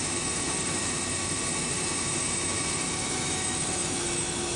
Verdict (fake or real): fake